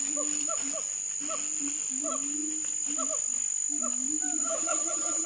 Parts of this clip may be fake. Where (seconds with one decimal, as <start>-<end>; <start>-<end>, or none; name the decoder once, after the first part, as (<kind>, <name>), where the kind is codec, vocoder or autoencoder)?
4.4-5.3 (vocoder, HiFi-GAN)